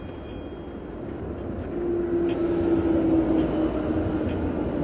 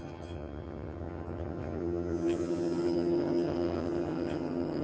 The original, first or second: first